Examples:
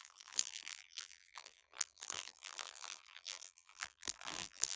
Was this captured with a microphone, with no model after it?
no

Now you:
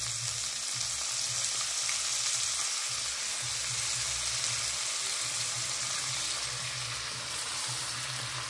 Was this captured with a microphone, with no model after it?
yes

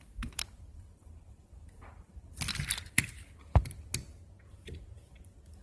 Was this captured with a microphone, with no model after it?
no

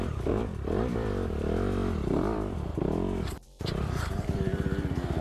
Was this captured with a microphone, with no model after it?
no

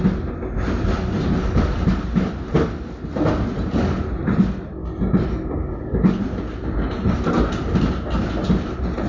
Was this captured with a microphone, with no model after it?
yes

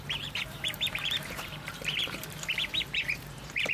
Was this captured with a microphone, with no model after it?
no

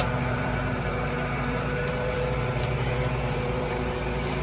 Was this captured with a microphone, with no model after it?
no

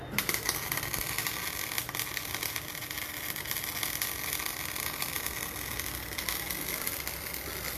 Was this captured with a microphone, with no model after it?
yes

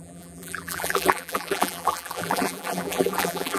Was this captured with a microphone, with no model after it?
no